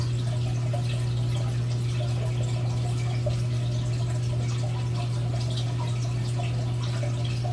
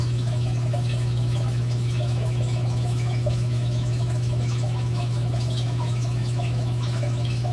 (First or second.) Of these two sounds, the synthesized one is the second